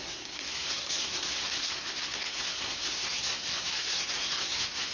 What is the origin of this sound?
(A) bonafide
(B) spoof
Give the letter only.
B